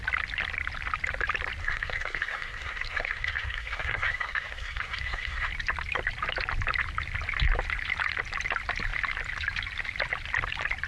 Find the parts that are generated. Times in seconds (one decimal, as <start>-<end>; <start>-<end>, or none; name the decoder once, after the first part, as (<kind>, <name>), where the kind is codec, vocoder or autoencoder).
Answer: 1.6-5.5 (codec, SNAC)